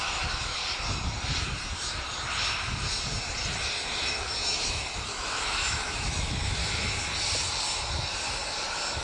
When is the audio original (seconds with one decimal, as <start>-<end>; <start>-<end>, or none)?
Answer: 0.6-4.0; 6.6-9.0